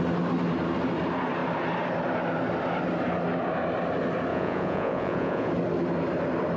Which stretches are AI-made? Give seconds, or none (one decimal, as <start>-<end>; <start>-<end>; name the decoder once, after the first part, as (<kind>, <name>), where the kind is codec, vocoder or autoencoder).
4.3-5.5 (vocoder, Vocos)